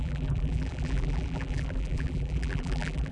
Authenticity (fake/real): fake